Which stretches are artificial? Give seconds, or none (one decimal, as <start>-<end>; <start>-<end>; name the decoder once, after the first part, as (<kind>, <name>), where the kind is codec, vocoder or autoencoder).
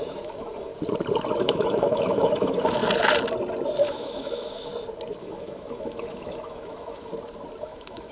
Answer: 0.0-0.7 (autoencoder, DAC-VAE); 1.4-2.8; 3.8-4.7; 5.2-7.1; 7.6-8.1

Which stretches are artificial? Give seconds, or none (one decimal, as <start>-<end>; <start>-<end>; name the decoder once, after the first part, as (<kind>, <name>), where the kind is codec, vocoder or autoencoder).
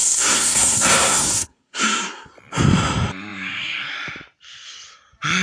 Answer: 0.0-2.3 (codec, SNAC)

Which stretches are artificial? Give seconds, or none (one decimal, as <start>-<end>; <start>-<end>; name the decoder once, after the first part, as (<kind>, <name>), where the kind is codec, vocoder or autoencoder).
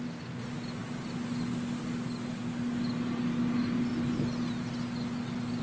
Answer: none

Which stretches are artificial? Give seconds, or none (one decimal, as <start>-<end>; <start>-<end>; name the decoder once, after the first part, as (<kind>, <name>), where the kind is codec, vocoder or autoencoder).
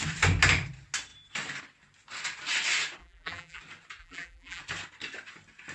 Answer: 3.0-3.6 (vocoder, BigVGAN v2); 4.0-4.6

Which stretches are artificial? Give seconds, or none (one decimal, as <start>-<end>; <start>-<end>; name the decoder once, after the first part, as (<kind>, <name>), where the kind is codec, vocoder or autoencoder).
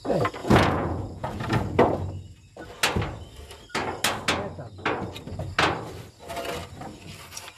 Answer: 0.4-1.4 (vocoder, Vocos)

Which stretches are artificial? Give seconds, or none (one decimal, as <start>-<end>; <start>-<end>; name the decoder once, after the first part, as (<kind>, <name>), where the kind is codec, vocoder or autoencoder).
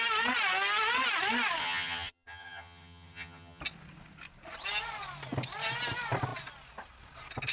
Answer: 1.6-3.6 (vocoder, HiFi-GAN)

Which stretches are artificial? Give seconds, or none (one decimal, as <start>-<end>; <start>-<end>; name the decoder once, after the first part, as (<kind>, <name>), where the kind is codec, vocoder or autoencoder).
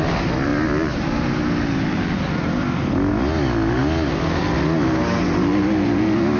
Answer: none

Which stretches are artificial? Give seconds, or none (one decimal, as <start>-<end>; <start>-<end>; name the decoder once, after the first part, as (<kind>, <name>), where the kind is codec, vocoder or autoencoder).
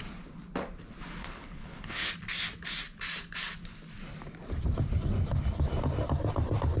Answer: 1.2-2.1 (codec, HILCodec)